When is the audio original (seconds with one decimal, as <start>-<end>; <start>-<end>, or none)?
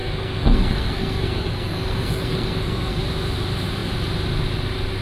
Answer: 3.0-5.0